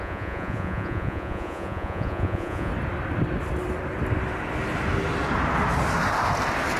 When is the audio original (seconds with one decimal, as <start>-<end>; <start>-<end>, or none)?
2.7-6.8